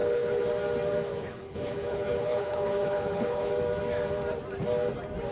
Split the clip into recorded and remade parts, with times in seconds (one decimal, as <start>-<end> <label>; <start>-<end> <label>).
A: 0.0-0.5 remade; 0.5-1.1 recorded; 1.1-3.5 remade; 3.5-5.3 recorded